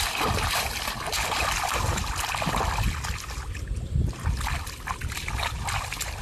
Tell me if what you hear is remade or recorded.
recorded